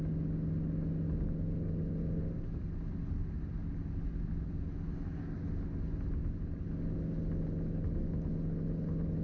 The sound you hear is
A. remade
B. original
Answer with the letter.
B